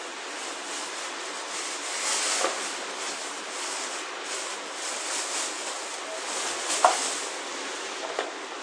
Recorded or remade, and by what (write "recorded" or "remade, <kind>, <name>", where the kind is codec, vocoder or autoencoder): recorded